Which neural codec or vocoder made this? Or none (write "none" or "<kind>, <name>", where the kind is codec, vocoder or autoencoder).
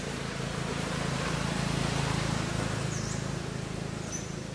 vocoder, BigVGAN v2